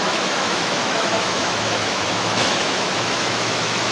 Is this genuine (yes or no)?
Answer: no